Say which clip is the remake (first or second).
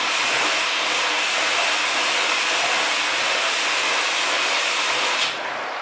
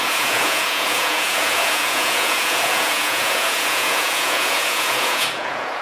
second